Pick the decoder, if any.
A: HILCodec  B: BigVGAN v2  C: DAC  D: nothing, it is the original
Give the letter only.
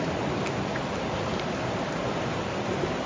D